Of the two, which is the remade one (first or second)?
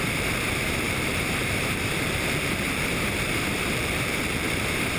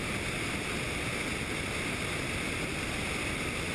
first